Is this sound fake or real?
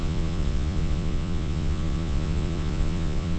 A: fake